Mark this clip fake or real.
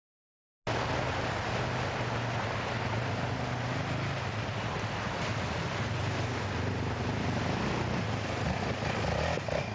real